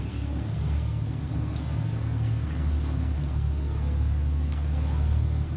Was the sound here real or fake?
fake